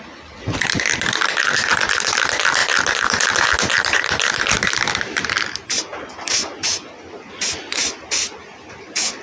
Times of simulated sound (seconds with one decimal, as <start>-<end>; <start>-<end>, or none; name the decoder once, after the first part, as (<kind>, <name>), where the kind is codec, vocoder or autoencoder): none

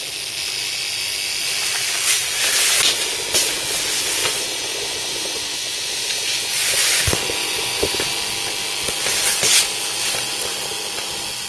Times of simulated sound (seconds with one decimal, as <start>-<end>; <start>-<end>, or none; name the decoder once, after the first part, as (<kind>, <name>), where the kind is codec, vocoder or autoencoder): 4.2-7.0 (vocoder, Vocos); 7.4-8.1

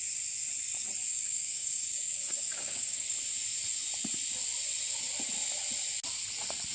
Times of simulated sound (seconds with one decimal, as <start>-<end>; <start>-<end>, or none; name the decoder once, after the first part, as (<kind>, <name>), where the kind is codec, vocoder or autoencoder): 1.1-3.1 (codec, DAC)

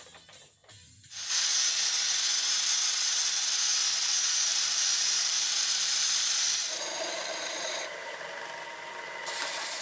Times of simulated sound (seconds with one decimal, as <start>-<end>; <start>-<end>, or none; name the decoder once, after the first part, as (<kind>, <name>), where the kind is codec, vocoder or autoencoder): 4.5-8.2 (vocoder, BigVGAN v2)

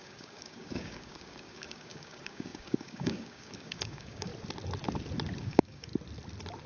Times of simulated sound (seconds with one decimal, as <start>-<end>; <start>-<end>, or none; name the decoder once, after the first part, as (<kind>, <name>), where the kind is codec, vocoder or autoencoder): 0.0-4.3 (codec, DAC); 5.4-5.9